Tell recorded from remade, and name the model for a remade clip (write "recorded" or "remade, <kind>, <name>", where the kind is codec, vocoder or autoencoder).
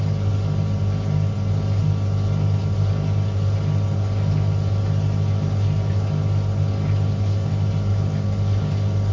recorded